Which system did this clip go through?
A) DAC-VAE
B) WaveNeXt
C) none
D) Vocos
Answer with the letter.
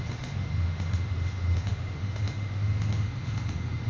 A